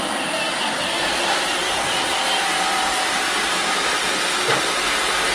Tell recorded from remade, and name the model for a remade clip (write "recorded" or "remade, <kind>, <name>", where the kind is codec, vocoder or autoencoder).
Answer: recorded